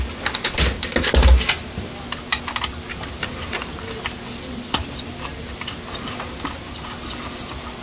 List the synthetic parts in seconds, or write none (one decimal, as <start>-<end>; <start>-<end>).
none

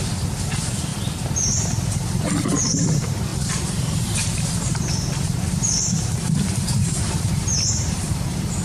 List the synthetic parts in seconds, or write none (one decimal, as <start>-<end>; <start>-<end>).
0.0-0.9; 2.4-8.6

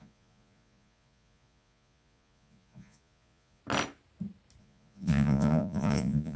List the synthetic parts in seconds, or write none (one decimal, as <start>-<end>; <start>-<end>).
0.0-3.6; 4.6-6.4

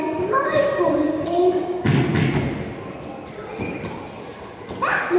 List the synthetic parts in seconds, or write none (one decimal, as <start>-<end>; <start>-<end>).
0.0-1.9

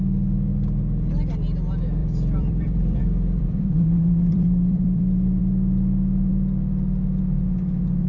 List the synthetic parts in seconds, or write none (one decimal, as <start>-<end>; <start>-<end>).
2.0-5.4

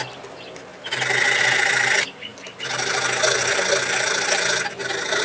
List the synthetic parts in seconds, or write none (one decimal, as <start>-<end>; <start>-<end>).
none